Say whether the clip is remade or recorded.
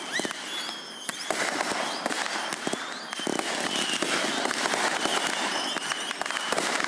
recorded